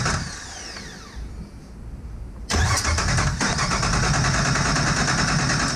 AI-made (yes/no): no